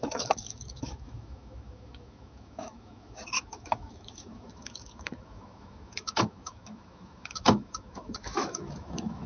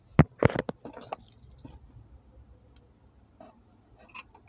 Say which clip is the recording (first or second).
second